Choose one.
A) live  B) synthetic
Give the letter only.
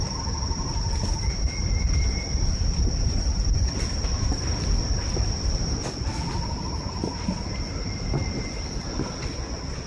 A